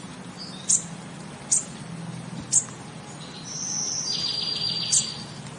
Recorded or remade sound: recorded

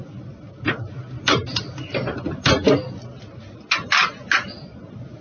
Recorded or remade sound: recorded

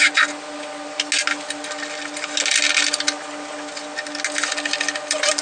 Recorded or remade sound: recorded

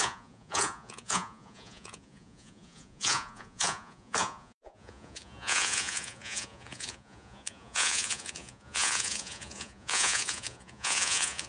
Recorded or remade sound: remade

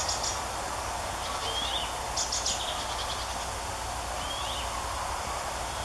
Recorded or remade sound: recorded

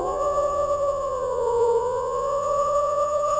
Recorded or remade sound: remade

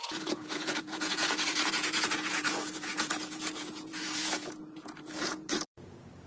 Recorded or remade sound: remade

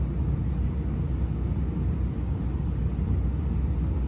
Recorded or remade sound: recorded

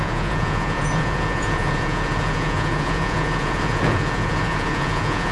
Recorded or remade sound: remade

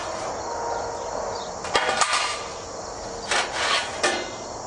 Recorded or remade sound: recorded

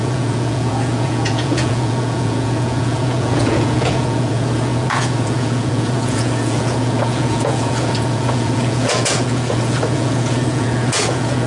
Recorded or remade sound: remade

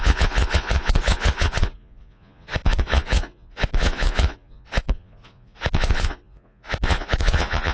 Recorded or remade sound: remade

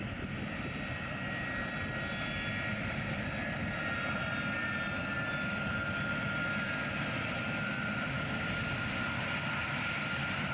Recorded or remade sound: recorded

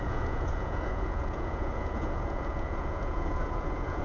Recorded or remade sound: remade